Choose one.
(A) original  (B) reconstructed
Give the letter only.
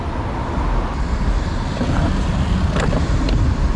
A